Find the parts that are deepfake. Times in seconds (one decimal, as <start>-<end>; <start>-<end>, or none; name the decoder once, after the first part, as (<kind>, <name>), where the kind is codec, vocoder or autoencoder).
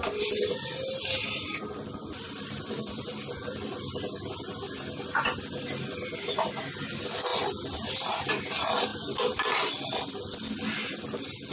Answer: 1.2-3.0 (vocoder, BigVGAN v2); 8.9-9.7